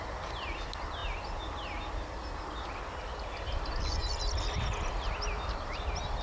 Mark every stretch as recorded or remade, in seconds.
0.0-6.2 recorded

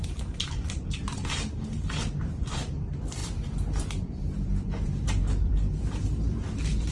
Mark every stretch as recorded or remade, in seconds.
0.0-2.6 remade; 2.6-3.2 recorded; 3.2-6.9 remade

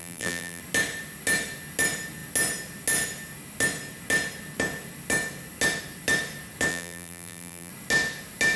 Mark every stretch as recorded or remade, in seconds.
0.0-0.6 remade; 0.6-6.7 recorded; 6.7-7.7 remade; 7.7-8.6 recorded

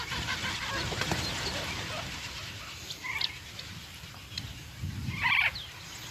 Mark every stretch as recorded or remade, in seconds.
0.0-3.0 remade; 3.0-6.1 recorded

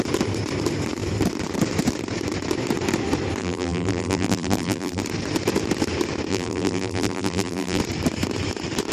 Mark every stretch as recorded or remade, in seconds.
0.0-3.4 recorded; 3.4-5.0 remade; 5.0-6.3 recorded; 6.3-7.8 remade; 7.8-8.9 recorded